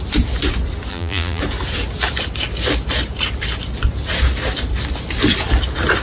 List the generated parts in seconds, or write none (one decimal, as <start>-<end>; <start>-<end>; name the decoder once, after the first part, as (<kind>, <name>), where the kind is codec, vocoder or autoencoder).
0.9-1.4 (vocoder, BigVGAN v2)